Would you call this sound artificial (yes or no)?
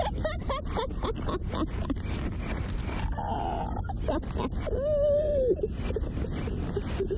no